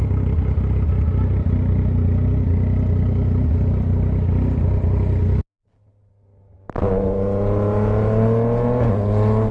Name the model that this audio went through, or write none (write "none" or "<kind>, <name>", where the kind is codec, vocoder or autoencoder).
none